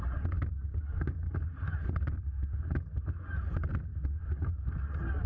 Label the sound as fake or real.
real